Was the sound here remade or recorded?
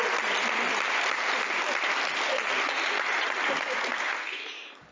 recorded